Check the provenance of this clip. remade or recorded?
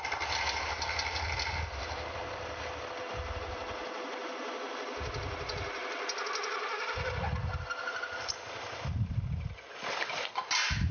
recorded